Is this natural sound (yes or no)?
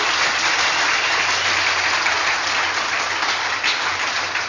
yes